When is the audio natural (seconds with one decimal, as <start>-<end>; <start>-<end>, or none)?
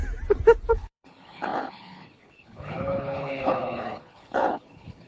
0.0-0.7